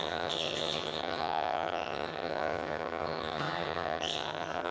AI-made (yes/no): yes